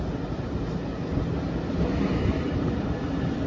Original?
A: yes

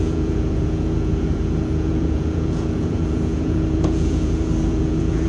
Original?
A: no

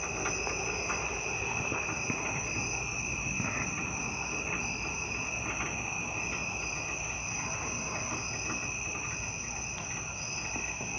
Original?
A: yes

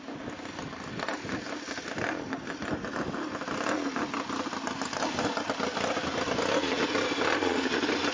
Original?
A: yes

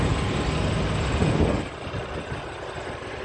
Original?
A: yes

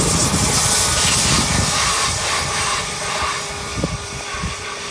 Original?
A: yes